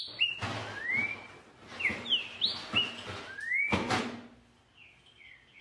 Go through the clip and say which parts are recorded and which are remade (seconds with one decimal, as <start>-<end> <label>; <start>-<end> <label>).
0.0-5.6 recorded

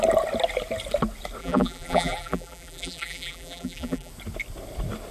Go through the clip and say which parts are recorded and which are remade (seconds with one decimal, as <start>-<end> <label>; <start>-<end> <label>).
0.0-1.4 recorded; 1.4-4.1 remade; 4.1-5.1 recorded

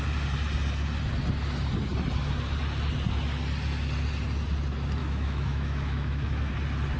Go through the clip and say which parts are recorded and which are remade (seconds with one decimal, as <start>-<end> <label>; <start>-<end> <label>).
0.0-5.0 recorded; 5.0-6.5 remade; 6.5-7.0 recorded

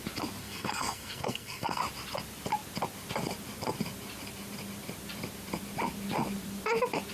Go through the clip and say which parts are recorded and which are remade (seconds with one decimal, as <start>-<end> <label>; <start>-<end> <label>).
0.0-0.4 recorded; 0.4-1.8 remade; 1.8-7.1 recorded

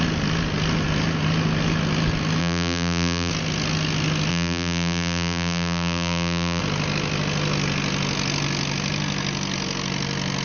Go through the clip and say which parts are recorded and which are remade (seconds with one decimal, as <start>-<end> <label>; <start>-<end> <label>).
0.0-2.4 recorded; 2.4-3.3 remade; 3.3-4.3 recorded; 4.3-6.6 remade; 6.6-10.4 recorded

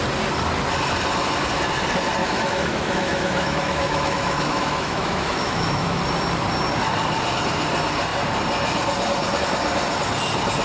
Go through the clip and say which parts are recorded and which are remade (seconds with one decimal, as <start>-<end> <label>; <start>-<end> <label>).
0.0-2.2 recorded; 2.2-6.0 remade; 6.0-10.6 recorded